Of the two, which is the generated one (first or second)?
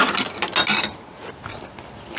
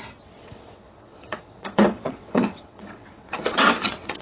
second